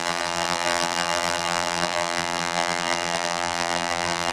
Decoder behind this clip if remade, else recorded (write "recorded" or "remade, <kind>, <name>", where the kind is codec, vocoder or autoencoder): remade, vocoder, BigVGAN v2